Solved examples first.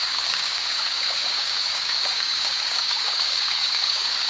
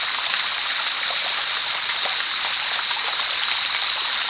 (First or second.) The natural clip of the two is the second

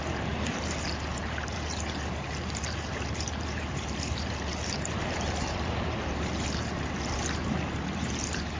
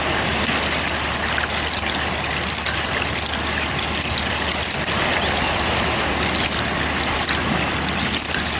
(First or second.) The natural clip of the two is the second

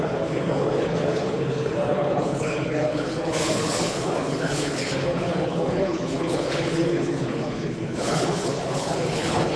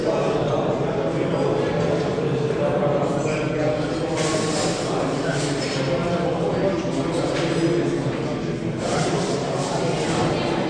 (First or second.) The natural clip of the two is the second